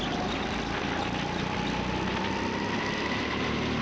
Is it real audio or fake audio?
real